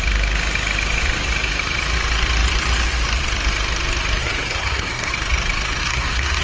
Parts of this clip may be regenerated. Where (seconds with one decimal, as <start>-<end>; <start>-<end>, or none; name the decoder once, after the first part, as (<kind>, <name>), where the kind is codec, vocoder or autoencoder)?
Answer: 4.2-5.1 (codec, SNAC); 5.8-6.4